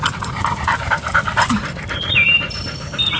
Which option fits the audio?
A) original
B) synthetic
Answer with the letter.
A